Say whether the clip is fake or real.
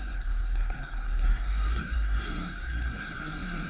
fake